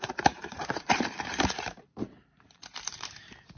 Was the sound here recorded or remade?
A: remade